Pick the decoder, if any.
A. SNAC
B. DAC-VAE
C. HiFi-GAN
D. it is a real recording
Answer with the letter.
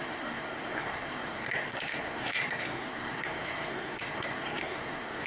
A